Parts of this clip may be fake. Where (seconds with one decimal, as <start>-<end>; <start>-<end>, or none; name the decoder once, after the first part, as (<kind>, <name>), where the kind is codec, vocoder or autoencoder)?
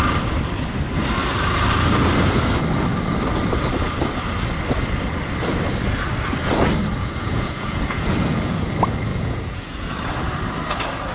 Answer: 7.0-8.7 (vocoder, Vocos); 9.1-9.9